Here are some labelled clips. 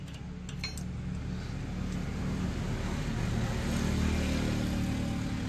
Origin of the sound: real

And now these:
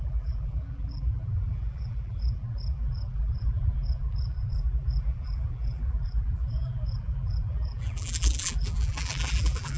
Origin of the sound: fake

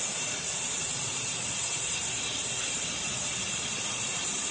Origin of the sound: fake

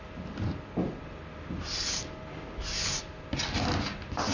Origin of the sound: real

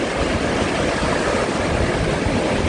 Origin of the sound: real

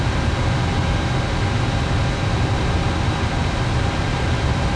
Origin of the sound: real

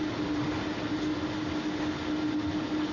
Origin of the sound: real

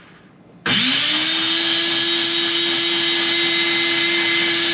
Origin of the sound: real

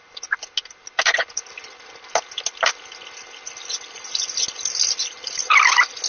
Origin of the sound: real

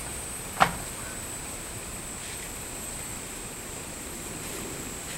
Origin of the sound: fake